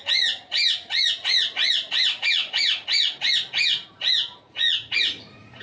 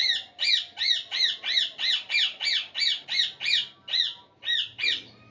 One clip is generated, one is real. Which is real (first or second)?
second